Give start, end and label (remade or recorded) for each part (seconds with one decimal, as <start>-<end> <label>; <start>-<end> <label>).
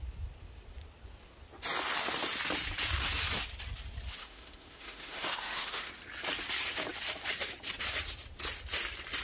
0.0-4.2 recorded; 4.2-5.9 remade; 5.9-9.2 recorded